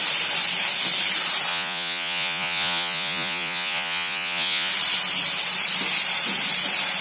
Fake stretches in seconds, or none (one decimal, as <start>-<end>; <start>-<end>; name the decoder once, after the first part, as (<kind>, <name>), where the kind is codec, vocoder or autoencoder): 1.5-4.7 (vocoder, Vocos)